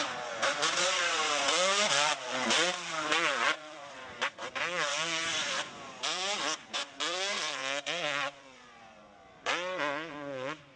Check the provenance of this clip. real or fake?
fake